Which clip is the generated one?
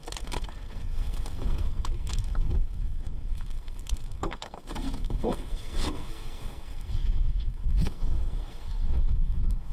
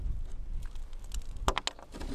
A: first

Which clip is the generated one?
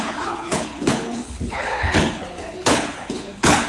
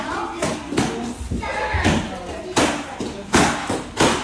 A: first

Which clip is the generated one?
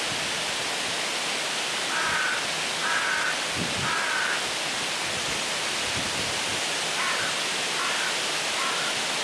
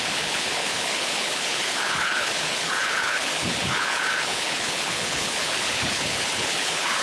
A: second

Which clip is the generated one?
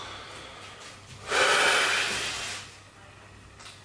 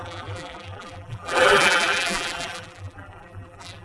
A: second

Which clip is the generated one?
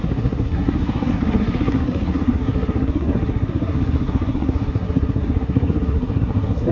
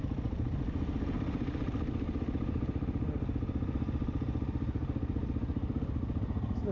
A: first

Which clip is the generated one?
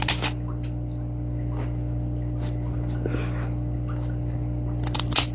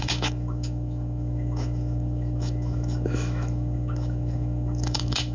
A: second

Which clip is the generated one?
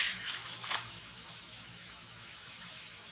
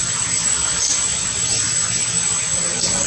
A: first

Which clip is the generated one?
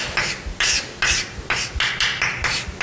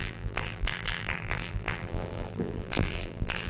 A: second